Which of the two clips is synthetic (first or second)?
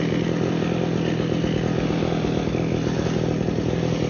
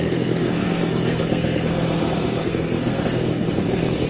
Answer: second